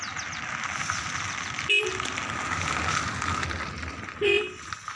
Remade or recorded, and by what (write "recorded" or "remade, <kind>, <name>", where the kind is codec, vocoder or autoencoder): recorded